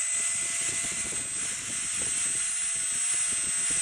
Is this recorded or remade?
recorded